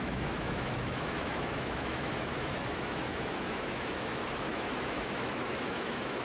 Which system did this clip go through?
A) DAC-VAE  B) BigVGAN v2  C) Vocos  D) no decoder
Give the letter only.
A